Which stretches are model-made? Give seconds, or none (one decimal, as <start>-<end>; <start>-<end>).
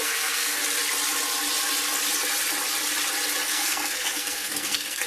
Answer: 0.0-0.6; 3.5-5.1